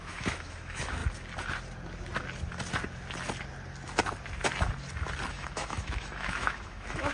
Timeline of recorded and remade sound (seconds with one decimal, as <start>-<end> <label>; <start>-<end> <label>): 0.0-1.0 remade; 1.0-5.3 recorded; 5.3-7.1 remade